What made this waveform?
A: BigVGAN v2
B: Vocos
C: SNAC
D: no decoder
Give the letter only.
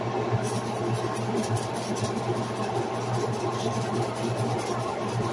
A